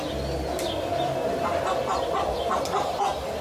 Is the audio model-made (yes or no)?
no